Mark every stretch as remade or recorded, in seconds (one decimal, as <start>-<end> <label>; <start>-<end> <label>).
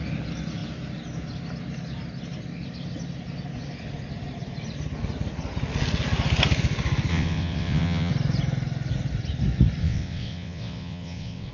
0.0-7.1 recorded; 7.1-8.1 remade; 8.1-9.8 recorded; 9.8-11.5 remade